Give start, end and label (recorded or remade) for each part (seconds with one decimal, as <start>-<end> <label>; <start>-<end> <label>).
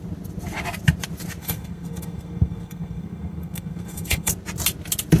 0.0-1.4 recorded; 1.4-4.3 remade; 4.3-5.2 recorded